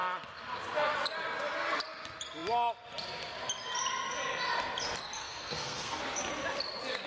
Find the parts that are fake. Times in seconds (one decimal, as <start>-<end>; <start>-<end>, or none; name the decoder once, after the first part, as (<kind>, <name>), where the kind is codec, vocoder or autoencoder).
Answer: 5.2-6.0 (codec, SNAC)